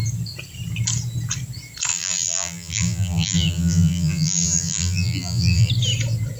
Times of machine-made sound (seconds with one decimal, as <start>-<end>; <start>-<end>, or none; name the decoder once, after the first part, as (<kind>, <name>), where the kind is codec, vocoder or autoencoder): 1.9-5.7 (vocoder, BigVGAN v2)